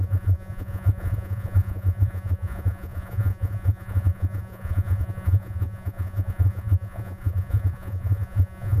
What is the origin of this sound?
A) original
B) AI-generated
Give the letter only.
B